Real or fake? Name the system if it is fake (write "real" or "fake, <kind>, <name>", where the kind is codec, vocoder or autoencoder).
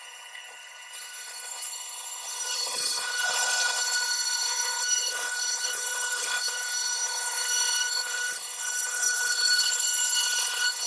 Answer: fake, codec, HILCodec